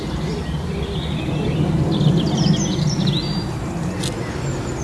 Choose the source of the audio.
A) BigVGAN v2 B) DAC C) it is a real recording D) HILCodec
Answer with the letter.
C